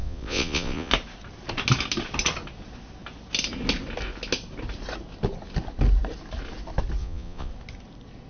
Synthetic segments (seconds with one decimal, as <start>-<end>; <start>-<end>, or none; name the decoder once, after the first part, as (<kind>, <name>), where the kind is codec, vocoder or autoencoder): 0.0-0.9 (vocoder, Vocos); 7.0-7.5